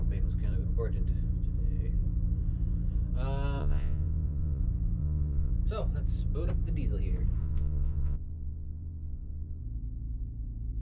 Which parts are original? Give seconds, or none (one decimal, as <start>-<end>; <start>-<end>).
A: 0.0-3.6; 4.6-5.0; 5.5-7.4; 9.6-10.8